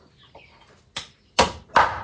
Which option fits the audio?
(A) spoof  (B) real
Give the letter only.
B